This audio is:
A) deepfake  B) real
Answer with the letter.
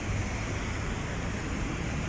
B